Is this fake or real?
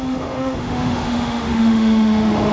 fake